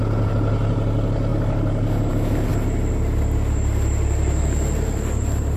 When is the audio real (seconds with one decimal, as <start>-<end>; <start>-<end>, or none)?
0.0-5.6

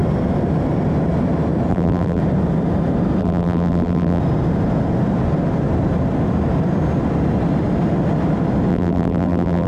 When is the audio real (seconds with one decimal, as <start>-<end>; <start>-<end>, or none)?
0.0-1.7; 2.2-3.2; 4.2-8.7

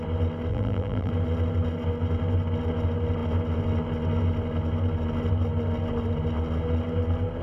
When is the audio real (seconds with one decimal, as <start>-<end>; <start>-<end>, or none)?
0.0-0.5; 1.1-7.4

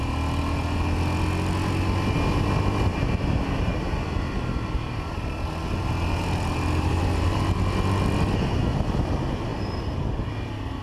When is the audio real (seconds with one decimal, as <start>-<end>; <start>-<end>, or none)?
0.0-2.9; 7.4-10.8

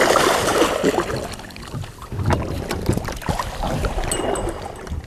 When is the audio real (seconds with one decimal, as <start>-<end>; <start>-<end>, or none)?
0.0-5.1

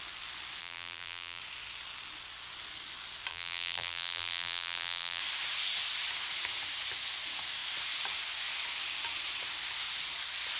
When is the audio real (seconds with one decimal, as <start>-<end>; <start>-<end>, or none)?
0.0-0.6; 1.4-3.3; 5.2-10.6

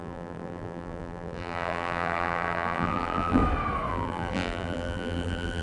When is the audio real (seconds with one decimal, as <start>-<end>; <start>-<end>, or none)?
3.4-3.9